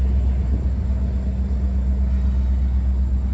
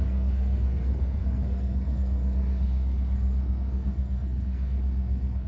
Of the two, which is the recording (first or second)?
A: first